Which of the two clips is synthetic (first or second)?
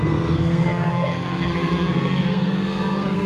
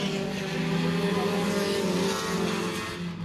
first